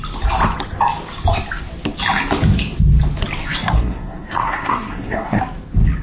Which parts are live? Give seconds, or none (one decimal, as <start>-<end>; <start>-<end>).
0.0-3.4; 5.4-6.0